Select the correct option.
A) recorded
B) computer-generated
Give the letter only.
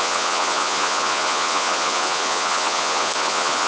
B